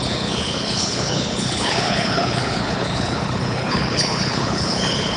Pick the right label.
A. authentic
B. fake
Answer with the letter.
B